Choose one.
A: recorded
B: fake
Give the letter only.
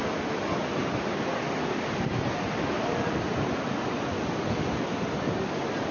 A